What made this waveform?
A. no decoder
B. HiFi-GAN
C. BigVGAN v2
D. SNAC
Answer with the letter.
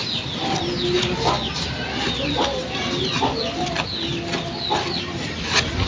A